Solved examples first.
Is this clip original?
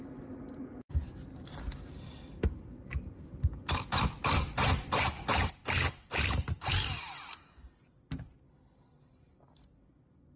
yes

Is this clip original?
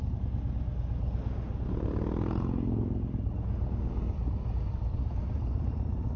yes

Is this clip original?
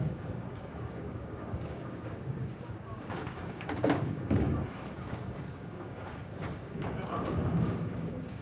no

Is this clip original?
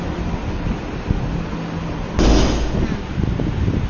yes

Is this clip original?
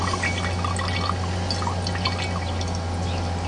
yes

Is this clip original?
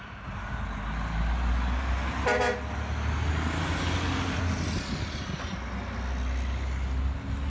yes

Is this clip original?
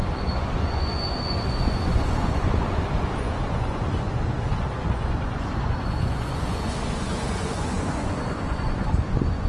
no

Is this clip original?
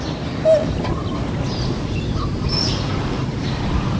yes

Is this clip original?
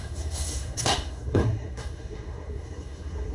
no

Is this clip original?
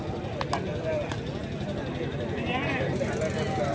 yes